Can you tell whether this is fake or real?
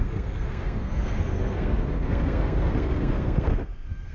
fake